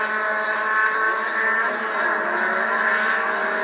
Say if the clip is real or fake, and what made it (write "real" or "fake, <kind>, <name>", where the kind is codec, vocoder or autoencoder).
real